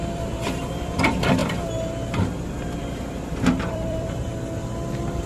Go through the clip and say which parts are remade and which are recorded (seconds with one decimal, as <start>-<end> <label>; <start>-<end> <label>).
0.0-1.4 remade; 1.4-2.5 recorded; 2.5-4.3 remade; 4.3-5.3 recorded